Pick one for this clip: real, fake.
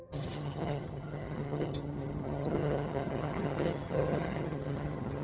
fake